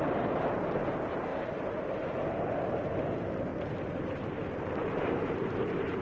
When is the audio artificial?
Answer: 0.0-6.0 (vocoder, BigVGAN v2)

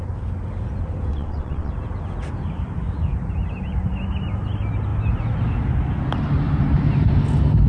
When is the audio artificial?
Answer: 1.1-1.7 (vocoder, WaveNeXt)